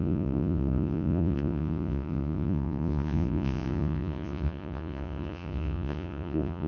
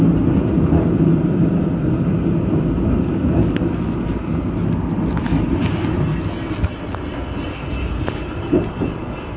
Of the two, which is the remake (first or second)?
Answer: first